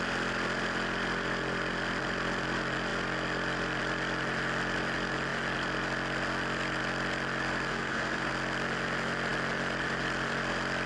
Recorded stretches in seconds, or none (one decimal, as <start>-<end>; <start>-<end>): 0.0-7.7; 8.3-10.9